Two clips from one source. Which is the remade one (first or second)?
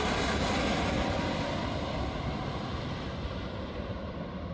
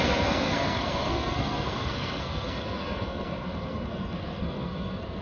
second